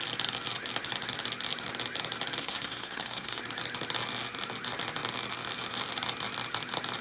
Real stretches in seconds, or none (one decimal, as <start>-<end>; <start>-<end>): 0.0-2.4; 3.4-7.0